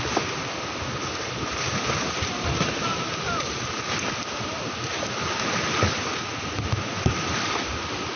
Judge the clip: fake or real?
real